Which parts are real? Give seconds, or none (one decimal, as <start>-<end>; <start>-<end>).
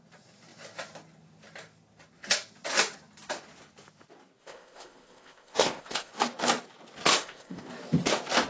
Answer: 0.0-4.4; 6.1-7.1; 7.7-8.5